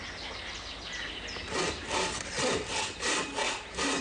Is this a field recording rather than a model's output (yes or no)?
yes